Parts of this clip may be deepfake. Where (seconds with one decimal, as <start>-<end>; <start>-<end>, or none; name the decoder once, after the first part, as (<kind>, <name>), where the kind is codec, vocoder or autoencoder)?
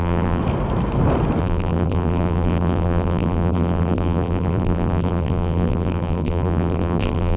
0.0-0.4 (vocoder, BigVGAN v2); 1.4-7.4